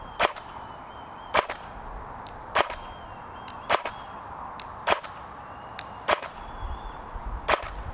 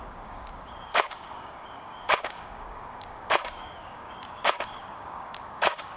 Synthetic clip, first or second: second